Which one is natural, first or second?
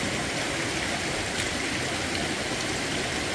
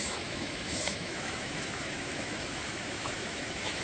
first